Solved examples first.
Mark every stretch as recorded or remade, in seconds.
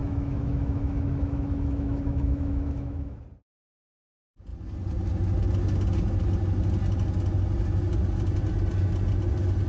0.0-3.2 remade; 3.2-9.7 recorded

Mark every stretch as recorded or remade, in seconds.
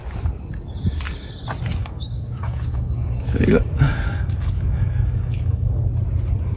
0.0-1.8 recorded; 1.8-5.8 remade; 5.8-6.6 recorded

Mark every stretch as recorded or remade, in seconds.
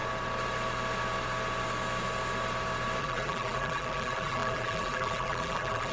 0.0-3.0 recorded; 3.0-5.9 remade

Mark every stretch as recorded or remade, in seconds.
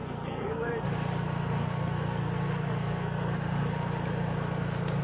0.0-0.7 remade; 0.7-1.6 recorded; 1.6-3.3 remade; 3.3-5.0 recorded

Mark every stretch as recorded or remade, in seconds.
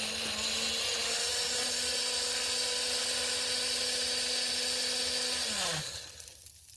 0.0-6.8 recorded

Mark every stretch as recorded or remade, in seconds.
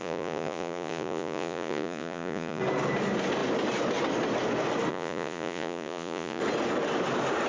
0.0-2.6 remade; 2.6-4.9 recorded; 4.9-6.4 remade; 6.4-7.5 recorded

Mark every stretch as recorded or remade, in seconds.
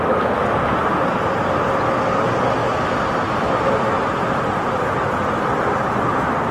0.0-6.5 recorded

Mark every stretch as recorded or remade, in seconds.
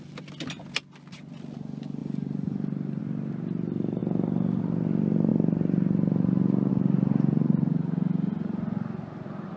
0.0-2.0 recorded; 2.0-3.0 remade; 3.0-9.6 recorded